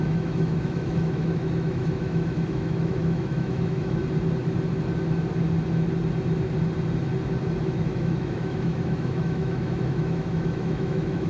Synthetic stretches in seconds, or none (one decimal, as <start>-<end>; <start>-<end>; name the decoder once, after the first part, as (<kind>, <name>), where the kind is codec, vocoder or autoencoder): 0.0-4.0 (autoencoder, DAC-VAE); 7.6-11.3